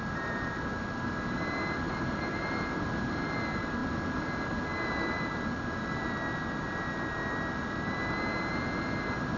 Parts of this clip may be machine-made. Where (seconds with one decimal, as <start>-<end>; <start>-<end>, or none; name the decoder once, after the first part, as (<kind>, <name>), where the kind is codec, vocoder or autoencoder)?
none